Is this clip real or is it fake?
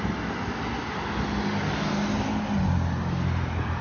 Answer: real